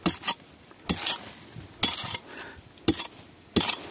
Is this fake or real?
real